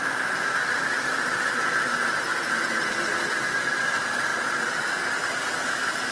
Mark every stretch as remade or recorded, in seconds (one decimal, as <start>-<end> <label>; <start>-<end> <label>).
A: 0.0-2.3 recorded; 2.3-2.8 remade; 2.8-6.1 recorded